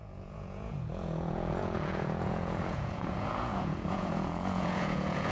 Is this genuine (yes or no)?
no